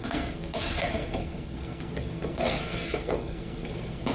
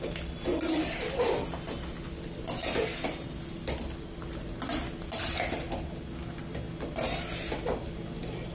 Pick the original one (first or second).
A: second